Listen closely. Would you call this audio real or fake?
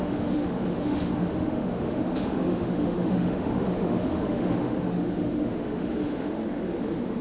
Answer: fake